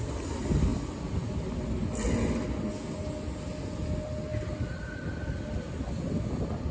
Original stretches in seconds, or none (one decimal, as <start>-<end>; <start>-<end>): 0.0-6.7